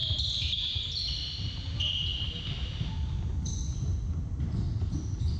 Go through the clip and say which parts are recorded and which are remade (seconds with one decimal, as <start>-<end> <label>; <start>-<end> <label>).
0.0-0.8 remade; 0.8-5.4 recorded